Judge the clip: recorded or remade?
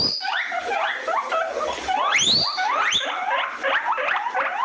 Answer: recorded